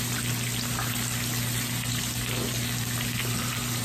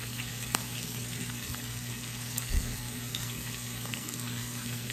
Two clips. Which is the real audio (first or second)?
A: first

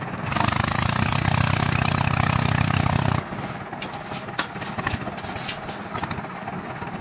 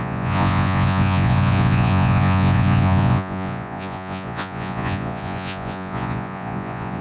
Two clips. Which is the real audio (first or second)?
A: first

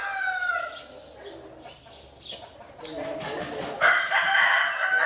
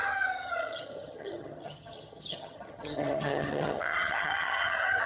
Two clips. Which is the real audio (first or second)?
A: first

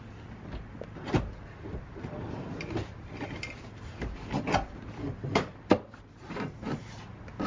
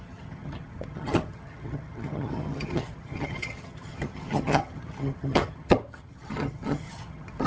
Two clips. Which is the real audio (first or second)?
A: first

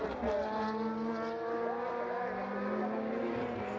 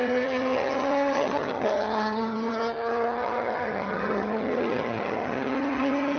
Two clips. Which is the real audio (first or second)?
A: first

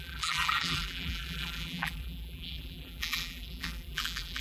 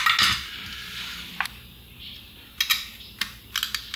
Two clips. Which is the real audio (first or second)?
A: second